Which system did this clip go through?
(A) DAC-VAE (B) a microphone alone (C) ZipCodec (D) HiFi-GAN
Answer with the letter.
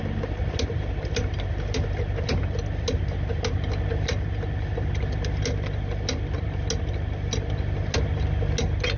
B